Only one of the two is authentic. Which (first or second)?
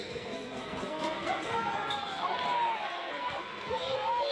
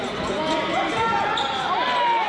second